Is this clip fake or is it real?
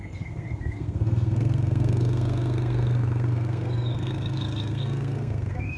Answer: fake